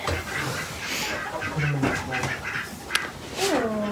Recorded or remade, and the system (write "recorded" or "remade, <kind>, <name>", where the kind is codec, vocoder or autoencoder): recorded